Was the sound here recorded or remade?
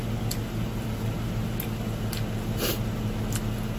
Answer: recorded